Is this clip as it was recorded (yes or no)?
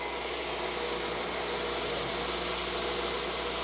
yes